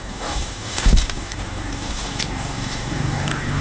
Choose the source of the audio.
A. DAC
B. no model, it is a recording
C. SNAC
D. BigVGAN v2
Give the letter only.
A